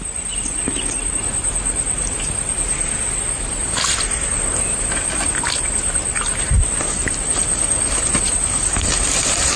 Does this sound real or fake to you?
real